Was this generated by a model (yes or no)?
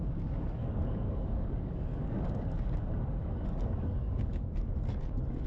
yes